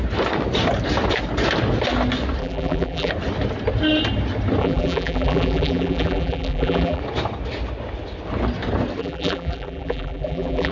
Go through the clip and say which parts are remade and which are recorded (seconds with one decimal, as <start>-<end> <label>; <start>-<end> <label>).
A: 0.0-2.4 recorded; 2.4-3.1 remade; 3.1-4.6 recorded; 4.6-7.0 remade; 7.0-9.0 recorded; 9.0-10.7 remade